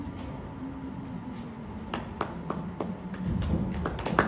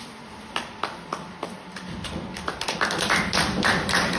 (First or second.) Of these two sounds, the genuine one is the first